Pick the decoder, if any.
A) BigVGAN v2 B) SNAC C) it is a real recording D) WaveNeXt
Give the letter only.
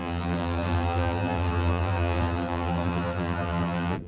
A